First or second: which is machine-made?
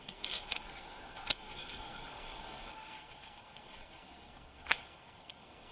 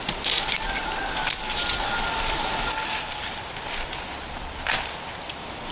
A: first